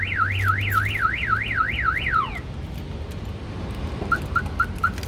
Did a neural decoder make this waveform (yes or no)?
no